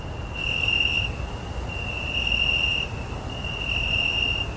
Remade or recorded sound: recorded